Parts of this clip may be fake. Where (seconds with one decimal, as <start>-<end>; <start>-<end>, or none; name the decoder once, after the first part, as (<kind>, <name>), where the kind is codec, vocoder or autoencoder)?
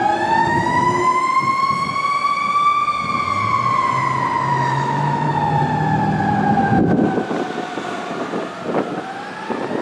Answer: 0.4-1.2 (autoencoder, DAC-VAE); 4.5-5.3